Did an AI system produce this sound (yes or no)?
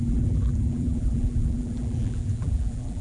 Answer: yes